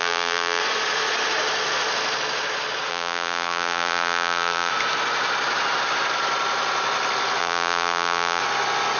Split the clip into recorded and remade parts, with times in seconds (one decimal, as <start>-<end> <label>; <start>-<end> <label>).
0.0-0.6 remade; 0.6-2.9 recorded; 2.9-4.7 remade; 4.7-7.4 recorded; 7.4-8.4 remade; 8.4-9.0 recorded